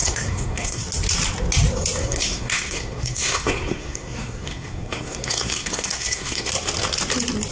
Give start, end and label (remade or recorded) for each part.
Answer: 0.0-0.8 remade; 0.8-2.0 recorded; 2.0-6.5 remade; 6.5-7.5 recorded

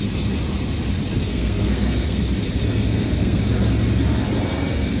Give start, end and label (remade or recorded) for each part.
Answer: 0.0-1.2 recorded; 1.2-2.2 remade; 2.2-2.7 recorded; 2.7-3.4 remade; 3.4-5.0 recorded

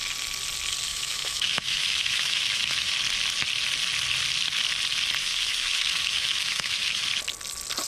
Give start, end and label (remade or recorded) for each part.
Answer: 0.0-0.9 recorded; 0.9-2.9 remade; 2.9-5.2 recorded; 5.2-7.0 remade; 7.0-7.9 recorded

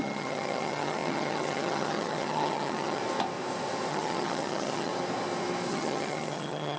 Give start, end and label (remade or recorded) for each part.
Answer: 0.0-3.0 remade; 3.0-3.9 recorded; 3.9-4.9 remade; 4.9-5.7 recorded; 5.7-6.8 remade

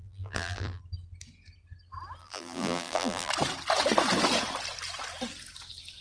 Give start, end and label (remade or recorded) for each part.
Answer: 0.0-0.8 remade; 0.8-2.2 recorded; 2.2-3.3 remade; 3.3-6.0 recorded

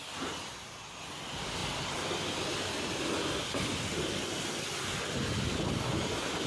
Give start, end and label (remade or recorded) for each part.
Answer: 0.0-6.5 recorded

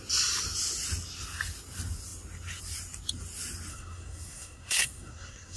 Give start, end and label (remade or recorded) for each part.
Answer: 0.0-3.7 recorded; 3.7-5.6 remade

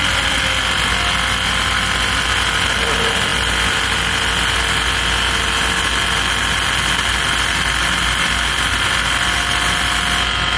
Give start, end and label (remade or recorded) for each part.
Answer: 0.0-10.6 recorded